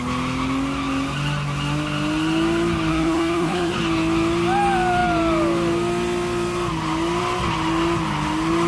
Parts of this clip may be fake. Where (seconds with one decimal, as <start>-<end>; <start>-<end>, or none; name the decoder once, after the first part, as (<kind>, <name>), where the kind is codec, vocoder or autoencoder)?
2.9-3.7 (codec, SNAC)

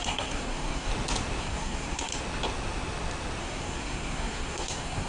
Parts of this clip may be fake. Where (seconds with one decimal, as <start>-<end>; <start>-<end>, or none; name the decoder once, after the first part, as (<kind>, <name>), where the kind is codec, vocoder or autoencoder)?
0.0-0.9 (codec, SNAC); 1.4-2.1; 3.4-5.1

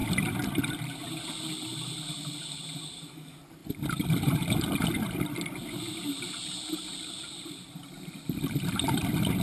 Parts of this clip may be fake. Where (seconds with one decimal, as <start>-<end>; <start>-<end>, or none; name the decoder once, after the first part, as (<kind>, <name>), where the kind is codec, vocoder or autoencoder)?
3.6-4.9 (vocoder, BigVGAN v2)

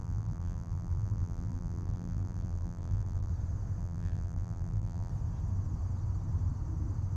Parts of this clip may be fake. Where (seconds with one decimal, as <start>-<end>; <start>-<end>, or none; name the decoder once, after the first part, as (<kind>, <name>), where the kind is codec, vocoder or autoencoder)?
0.0-3.3 (vocoder, BigVGAN v2); 3.8-5.1

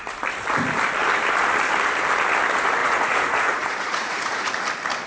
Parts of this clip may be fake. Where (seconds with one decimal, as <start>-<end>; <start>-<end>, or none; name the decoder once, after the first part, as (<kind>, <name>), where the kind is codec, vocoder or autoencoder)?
2.8-4.5 (vocoder, Vocos)

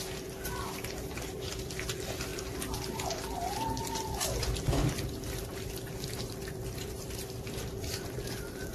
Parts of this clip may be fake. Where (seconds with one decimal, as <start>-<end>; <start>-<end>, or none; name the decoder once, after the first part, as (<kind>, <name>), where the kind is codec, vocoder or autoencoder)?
0.0-2.3 (vocoder, BigVGAN v2); 3.1-8.7

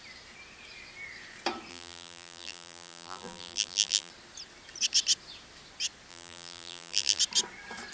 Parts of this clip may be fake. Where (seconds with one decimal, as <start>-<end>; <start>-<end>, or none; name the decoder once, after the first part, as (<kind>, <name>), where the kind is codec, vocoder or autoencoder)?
1.7-4.1 (vocoder, BigVGAN v2); 6.1-7.2

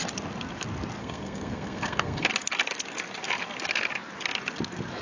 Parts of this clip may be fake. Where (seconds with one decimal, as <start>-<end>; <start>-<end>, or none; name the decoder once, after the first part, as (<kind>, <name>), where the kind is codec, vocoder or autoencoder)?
1.0-2.3 (codec, SNAC)